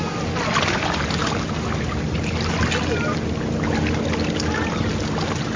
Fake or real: real